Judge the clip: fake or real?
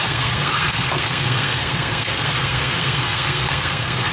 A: fake